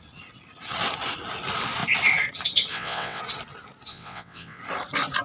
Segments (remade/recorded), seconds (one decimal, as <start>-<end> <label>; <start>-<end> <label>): 0.0-2.7 recorded; 2.7-3.2 remade; 3.2-3.9 recorded; 3.9-4.6 remade; 4.6-5.2 recorded